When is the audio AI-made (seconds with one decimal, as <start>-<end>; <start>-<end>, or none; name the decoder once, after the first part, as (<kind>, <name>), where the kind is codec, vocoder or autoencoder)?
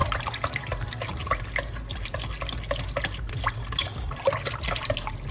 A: none